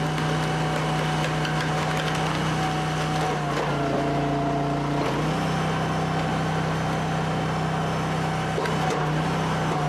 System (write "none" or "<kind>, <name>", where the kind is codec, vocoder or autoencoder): none